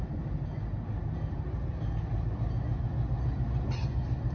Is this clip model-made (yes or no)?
no